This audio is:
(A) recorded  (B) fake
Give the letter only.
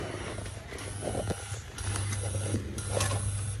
A